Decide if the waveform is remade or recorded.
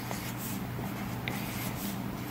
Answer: recorded